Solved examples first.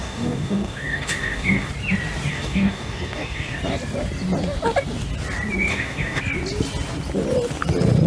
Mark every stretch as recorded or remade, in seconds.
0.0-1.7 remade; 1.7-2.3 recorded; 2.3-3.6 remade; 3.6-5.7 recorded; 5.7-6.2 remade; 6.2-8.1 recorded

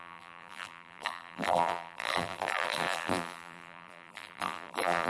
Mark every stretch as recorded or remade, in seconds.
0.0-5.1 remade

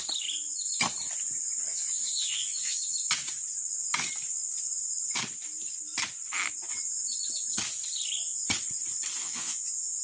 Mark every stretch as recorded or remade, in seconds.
0.0-1.7 recorded; 1.7-2.8 remade; 2.8-9.2 recorded; 9.2-10.0 remade

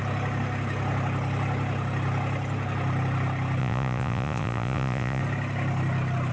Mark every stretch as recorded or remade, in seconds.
0.0-3.6 recorded; 3.6-5.2 remade; 5.2-6.3 recorded

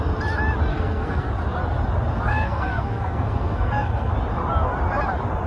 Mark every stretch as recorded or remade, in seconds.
0.0-0.7 recorded; 0.7-1.3 remade; 1.3-2.3 recorded; 2.3-4.1 remade; 4.1-5.5 recorded